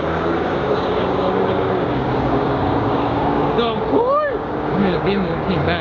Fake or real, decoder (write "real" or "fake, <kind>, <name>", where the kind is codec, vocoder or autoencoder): fake, codec, DAC